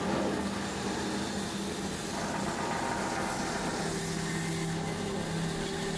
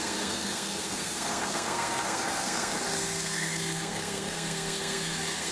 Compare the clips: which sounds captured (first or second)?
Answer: first